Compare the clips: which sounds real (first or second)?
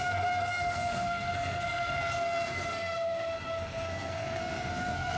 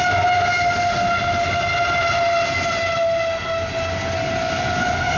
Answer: second